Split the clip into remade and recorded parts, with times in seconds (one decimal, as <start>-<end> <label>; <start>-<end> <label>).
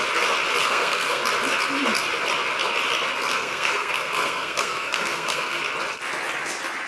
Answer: 0.0-0.6 recorded; 0.6-1.2 remade; 1.2-3.3 recorded; 3.3-5.6 remade; 5.6-6.9 recorded